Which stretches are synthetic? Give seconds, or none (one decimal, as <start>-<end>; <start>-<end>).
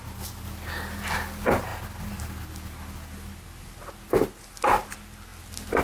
none